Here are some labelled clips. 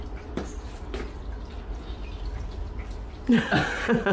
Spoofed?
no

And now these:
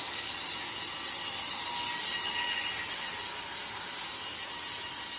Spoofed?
no